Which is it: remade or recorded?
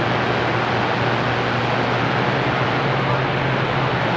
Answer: recorded